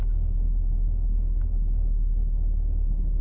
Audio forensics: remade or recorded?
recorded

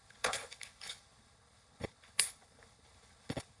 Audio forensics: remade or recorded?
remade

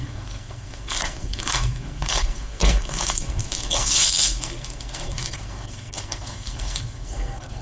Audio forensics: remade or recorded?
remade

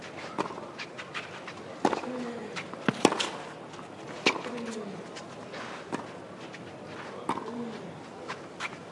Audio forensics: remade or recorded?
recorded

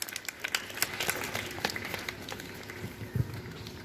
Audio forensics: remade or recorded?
recorded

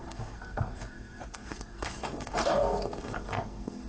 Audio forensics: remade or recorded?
remade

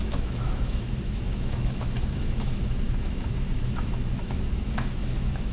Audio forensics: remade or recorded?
remade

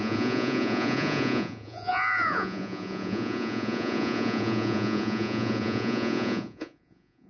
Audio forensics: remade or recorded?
remade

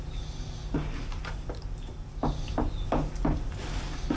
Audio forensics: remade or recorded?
recorded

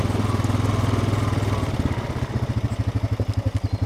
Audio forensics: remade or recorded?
recorded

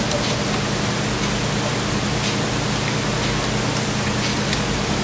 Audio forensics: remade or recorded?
recorded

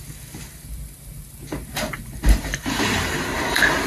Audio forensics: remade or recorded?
remade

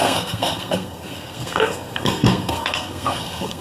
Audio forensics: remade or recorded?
remade